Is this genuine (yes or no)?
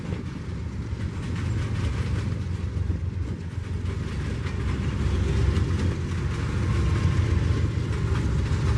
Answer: yes